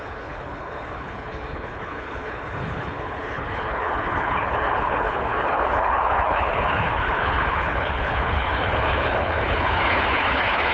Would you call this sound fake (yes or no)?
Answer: yes